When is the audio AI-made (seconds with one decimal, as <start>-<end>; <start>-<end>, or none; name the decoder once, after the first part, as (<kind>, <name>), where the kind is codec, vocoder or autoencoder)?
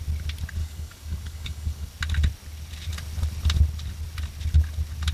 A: 0.6-1.9 (codec, DAC)